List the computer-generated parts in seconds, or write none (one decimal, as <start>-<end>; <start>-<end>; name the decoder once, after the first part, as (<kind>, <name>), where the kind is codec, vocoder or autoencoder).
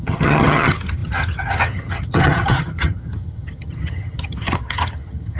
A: 0.0-5.4 (vocoder, HiFi-GAN)